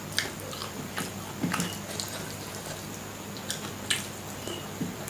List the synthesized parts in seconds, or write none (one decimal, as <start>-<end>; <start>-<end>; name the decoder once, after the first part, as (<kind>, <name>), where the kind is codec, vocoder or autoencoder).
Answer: none